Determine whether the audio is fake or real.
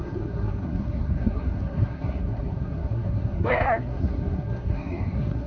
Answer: fake